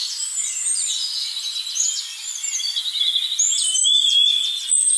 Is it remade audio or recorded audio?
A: recorded